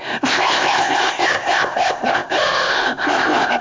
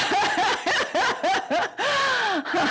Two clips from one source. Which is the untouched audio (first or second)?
second